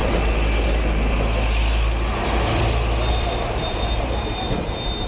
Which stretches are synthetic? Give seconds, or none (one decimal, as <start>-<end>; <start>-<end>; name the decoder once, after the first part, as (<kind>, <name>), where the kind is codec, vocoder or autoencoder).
3.1-5.1 (vocoder, BigVGAN v2)